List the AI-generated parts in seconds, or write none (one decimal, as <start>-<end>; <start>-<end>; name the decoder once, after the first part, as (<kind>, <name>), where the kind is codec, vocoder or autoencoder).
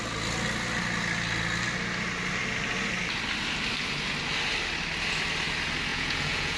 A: 5.9-6.6 (vocoder, Vocos)